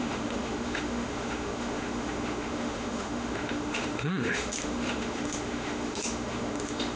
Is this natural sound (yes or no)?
no